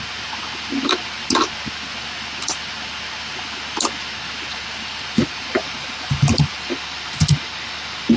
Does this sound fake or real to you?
real